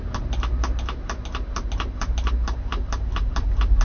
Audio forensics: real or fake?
real